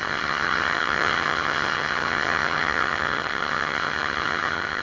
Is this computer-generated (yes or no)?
yes